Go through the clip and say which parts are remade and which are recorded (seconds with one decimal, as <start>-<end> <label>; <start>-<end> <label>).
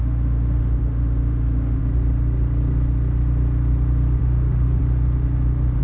0.0-1.8 remade; 1.8-4.2 recorded; 4.2-4.8 remade; 4.8-5.8 recorded